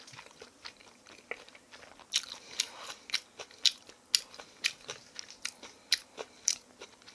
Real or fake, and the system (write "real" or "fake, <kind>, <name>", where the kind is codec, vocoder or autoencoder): real